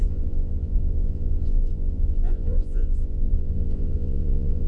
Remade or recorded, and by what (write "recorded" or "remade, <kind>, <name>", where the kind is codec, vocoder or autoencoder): remade, vocoder, Vocos